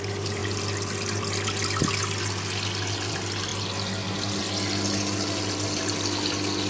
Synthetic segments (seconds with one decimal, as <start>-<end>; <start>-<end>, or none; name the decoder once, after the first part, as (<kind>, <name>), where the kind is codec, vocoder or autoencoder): none